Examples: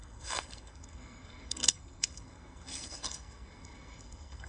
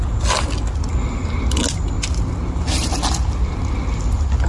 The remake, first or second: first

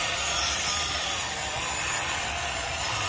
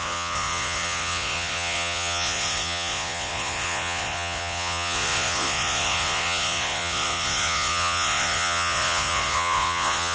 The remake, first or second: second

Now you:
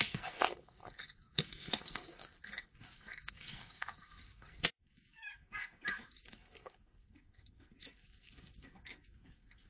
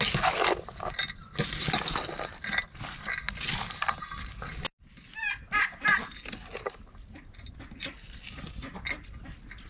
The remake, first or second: first